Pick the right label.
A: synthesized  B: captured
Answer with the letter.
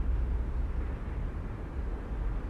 A